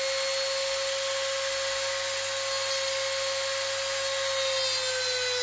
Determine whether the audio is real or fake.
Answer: real